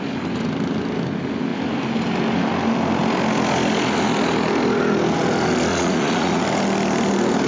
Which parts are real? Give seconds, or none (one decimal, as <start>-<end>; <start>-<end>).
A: 0.0-5.7; 6.4-7.5